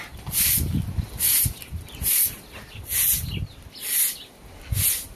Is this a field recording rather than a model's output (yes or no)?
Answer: yes